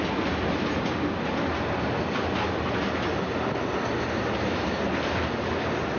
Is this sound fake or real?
real